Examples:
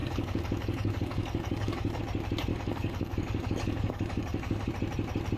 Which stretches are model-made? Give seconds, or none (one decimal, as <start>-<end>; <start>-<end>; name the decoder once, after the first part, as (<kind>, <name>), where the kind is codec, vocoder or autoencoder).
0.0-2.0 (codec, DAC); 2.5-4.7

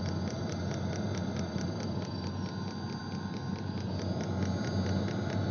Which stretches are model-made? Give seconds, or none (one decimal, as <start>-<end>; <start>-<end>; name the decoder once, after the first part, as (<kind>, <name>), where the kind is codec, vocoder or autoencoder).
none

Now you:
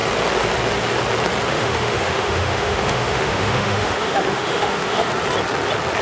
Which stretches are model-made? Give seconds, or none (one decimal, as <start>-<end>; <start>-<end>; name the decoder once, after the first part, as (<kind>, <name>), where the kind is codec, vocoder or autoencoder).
1.5-5.1 (autoencoder, DAC-VAE)